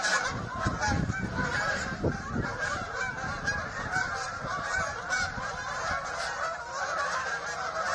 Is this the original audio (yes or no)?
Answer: no